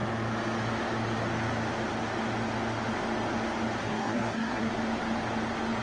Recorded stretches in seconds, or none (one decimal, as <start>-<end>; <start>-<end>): 0.0-3.8; 4.7-5.8